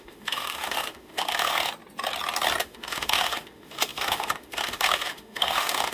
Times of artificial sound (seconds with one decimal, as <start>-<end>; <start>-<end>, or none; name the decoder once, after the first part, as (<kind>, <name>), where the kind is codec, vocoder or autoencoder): 0.0-1.7 (autoencoder, DAC-VAE); 2.6-5.9